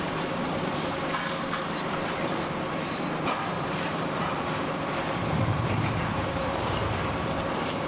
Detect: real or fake fake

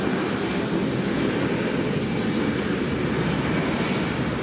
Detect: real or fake real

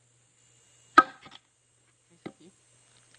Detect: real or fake real